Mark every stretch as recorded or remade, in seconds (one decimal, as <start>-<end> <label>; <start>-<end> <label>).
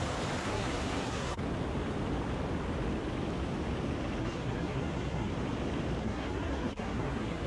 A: 0.0-0.4 recorded; 0.4-1.4 remade; 1.4-4.2 recorded; 4.2-5.3 remade; 5.3-6.0 recorded; 6.0-7.5 remade